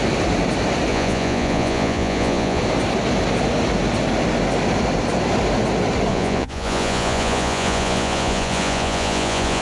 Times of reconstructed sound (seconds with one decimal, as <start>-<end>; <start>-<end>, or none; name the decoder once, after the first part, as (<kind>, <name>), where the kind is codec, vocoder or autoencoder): 0.9-2.6 (vocoder, Vocos); 6.1-9.6